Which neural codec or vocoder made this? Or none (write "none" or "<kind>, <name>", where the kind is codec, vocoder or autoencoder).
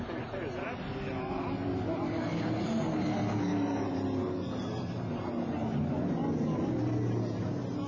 none